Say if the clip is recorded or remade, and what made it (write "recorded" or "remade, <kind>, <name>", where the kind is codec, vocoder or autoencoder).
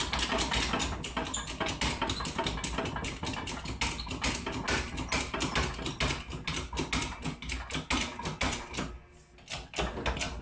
recorded